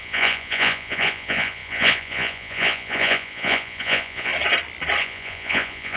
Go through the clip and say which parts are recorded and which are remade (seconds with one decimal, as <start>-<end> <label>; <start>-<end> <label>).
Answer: 0.0-4.3 remade; 4.3-5.0 recorded; 5.0-6.0 remade